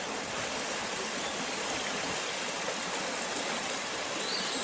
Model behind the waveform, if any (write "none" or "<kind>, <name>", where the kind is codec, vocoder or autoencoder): none